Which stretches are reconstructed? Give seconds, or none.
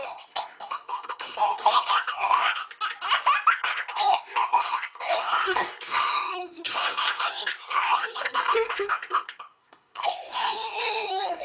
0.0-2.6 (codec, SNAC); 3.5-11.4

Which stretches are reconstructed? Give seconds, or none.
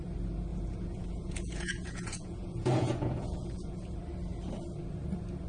0.5-3.8 (vocoder, Vocos)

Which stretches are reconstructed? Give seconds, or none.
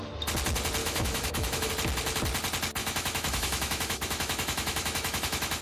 0.8-1.7 (autoencoder, DAC-VAE); 2.8-5.6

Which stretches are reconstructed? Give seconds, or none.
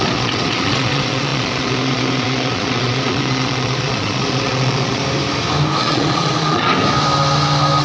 0.0-5.0 (vocoder, Vocos); 5.8-6.8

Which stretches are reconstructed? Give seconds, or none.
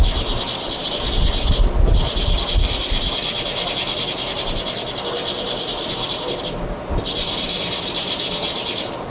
none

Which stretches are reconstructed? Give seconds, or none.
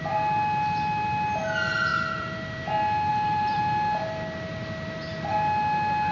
1.9-2.7 (vocoder, BigVGAN v2); 3.1-3.6